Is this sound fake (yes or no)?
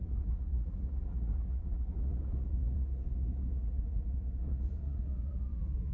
yes